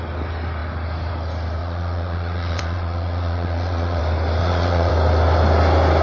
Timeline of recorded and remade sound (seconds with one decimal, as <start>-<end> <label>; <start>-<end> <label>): 0.0-1.6 recorded; 1.6-4.0 remade; 4.0-4.4 recorded; 4.4-4.9 remade; 4.9-6.0 recorded